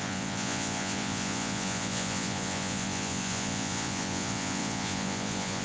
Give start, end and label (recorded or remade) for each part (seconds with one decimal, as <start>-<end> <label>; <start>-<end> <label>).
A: 0.0-5.6 remade